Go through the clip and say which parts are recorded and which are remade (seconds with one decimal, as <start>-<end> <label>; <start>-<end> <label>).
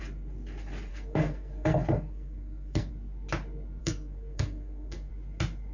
0.0-0.9 recorded; 0.9-2.9 remade; 2.9-3.8 recorded; 3.8-5.1 remade; 5.1-5.7 recorded